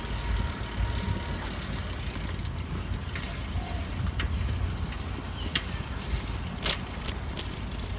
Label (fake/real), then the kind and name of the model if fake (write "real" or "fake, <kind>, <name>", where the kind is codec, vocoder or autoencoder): real